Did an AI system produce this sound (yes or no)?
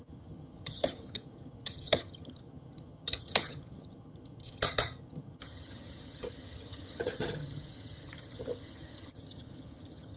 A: yes